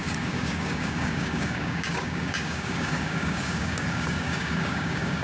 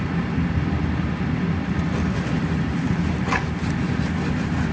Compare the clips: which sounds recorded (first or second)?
second